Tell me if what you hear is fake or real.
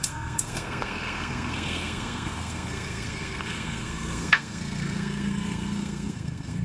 fake